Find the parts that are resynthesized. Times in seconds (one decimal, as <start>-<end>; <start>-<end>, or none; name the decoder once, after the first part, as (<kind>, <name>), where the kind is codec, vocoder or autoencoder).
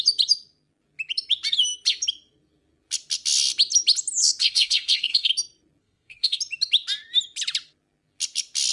4.4-5.3 (codec, SNAC); 5.8-6.4